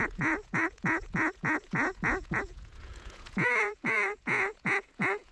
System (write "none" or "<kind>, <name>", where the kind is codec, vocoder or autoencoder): vocoder, Vocos